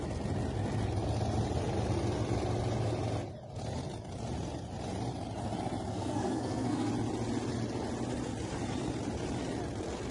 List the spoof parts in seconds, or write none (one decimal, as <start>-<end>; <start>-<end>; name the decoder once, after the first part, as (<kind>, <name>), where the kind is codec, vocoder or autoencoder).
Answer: 5.9-6.9 (codec, SNAC)